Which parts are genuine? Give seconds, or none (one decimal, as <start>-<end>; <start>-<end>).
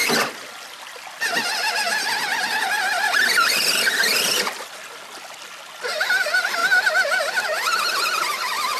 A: 0.0-8.8